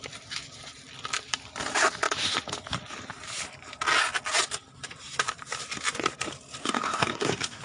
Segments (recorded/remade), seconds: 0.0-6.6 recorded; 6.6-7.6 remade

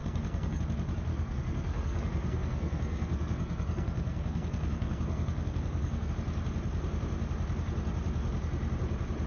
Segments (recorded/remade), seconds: 0.0-0.6 remade; 0.6-1.1 recorded; 1.1-6.1 remade; 6.1-9.3 recorded

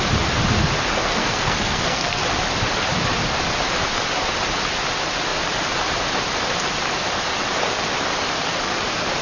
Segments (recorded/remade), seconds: 0.0-1.0 recorded; 1.0-2.2 remade; 2.2-9.2 recorded

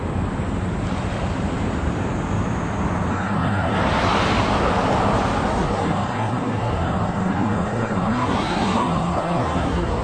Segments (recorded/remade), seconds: 0.0-3.1 recorded; 3.1-3.8 remade; 3.8-5.5 recorded; 5.5-10.0 remade

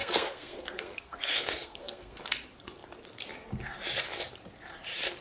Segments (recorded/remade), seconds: 0.0-2.2 remade; 2.2-5.2 recorded

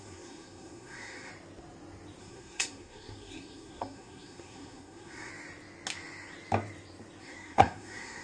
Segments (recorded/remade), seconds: 0.0-1.3 remade; 1.3-2.2 recorded; 2.2-5.3 remade; 5.3-7.2 recorded; 7.2-8.2 remade

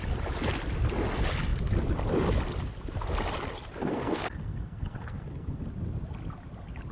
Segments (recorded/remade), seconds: 0.0-3.8 recorded; 3.8-5.6 remade; 5.6-6.9 recorded